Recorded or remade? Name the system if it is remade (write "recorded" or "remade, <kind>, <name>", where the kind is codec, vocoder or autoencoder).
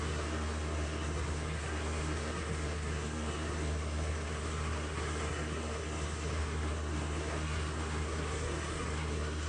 remade, codec, SNAC